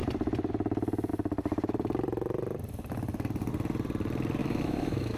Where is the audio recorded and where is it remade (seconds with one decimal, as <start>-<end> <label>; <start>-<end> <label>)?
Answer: 0.0-4.4 recorded; 4.4-5.2 remade